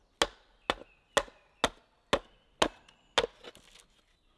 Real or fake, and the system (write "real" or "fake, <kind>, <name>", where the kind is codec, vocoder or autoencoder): real